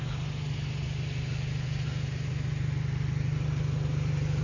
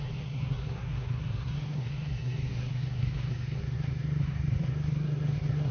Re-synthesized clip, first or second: second